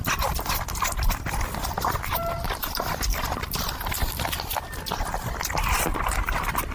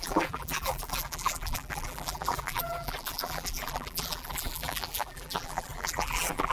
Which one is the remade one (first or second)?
second